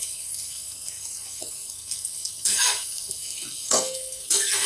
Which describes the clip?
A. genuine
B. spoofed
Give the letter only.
B